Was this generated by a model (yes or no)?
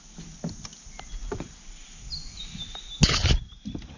no